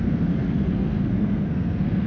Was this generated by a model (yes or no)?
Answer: yes